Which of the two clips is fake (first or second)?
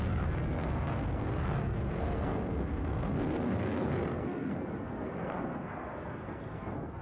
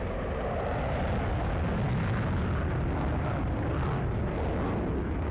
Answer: first